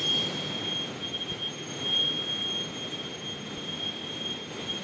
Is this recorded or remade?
recorded